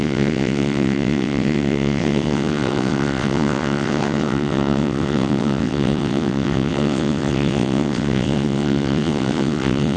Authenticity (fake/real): fake